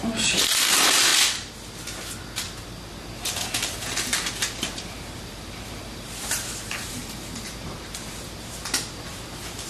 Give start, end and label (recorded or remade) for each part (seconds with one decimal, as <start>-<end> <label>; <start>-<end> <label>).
0.0-1.1 remade; 1.1-4.5 recorded; 4.5-9.7 remade